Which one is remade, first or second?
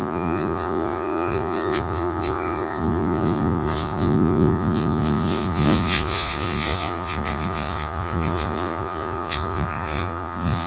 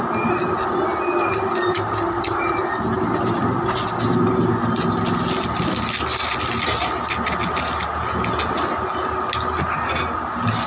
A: first